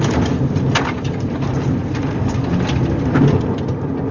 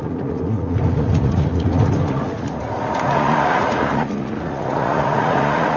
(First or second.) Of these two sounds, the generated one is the second